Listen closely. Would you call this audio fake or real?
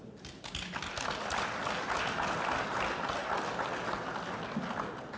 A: real